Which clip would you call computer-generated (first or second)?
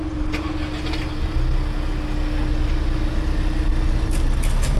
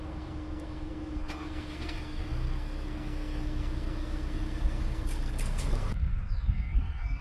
second